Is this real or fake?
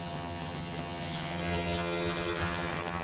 fake